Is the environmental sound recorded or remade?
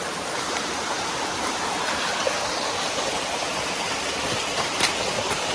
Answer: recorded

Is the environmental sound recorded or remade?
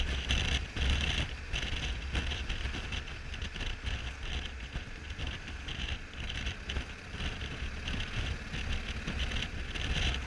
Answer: recorded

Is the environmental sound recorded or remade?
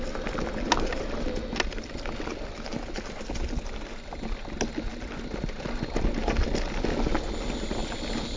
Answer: recorded